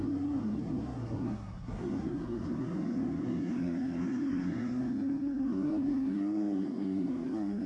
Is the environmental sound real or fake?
fake